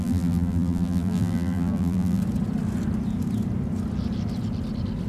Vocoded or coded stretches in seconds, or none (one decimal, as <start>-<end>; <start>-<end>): 0.0-2.2